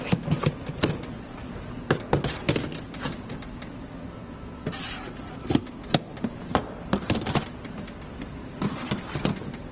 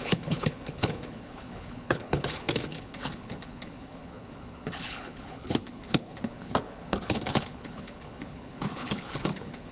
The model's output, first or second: second